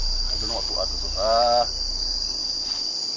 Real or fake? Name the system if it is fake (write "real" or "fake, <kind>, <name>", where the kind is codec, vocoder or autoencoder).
real